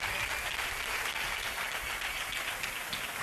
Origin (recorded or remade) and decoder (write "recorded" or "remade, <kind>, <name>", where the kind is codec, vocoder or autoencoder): recorded